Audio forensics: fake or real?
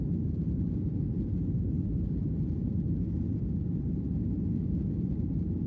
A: real